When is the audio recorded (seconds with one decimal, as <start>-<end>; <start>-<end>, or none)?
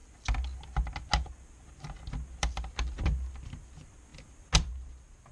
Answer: 0.0-5.3